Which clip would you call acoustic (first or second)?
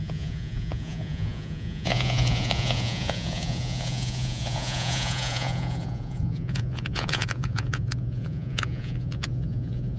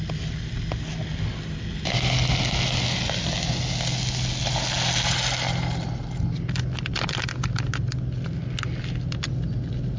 second